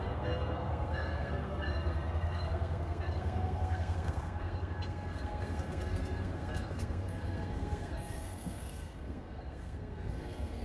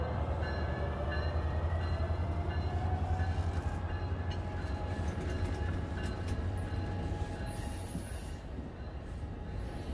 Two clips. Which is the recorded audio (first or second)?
second